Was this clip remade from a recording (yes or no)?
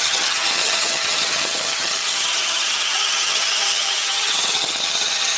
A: yes